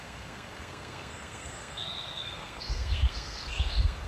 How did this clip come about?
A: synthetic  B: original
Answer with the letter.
A